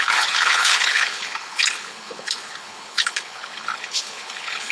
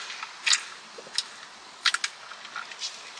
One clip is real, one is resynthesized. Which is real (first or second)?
second